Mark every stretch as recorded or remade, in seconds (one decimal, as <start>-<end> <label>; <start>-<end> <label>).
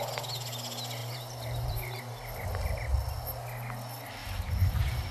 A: 0.0-1.0 recorded; 1.0-2.0 remade; 2.0-4.2 recorded; 4.2-5.1 remade